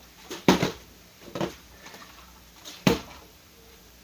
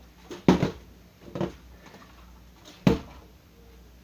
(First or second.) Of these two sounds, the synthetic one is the first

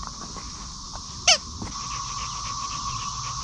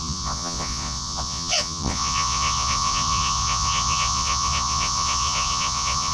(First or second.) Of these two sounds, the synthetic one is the second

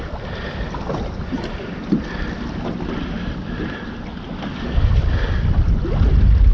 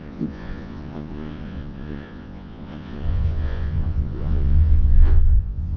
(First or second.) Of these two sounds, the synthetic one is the second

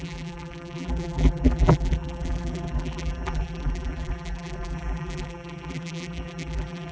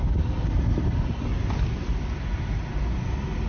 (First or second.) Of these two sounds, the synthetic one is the first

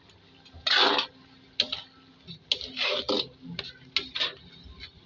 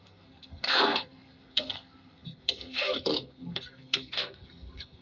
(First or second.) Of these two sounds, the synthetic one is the second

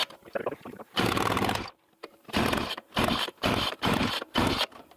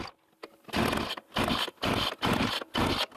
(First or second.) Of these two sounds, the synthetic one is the first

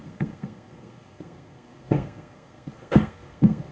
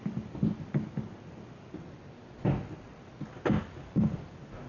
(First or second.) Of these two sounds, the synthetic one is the first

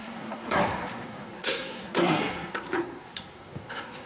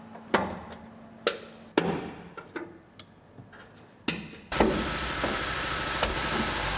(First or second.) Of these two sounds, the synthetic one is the first